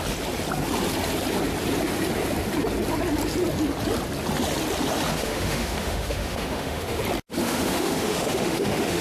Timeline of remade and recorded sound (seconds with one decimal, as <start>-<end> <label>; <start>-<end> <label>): 0.0-5.1 recorded; 5.1-7.0 remade; 7.0-7.4 recorded; 7.4-9.0 remade

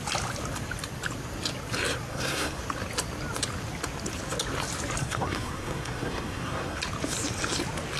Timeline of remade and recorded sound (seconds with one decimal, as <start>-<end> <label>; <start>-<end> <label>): 0.0-2.1 recorded; 2.1-2.6 remade; 2.6-5.0 recorded; 5.0-6.8 remade; 6.8-8.0 recorded

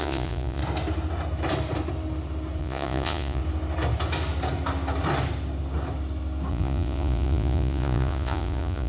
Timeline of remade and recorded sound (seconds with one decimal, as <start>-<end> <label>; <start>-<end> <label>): 0.0-0.6 remade; 0.6-2.6 recorded; 2.6-3.4 remade; 3.4-6.5 recorded; 6.5-8.9 remade